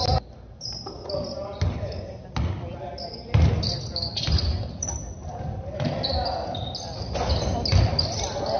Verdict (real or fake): real